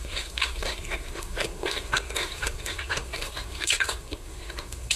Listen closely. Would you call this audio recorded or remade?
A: remade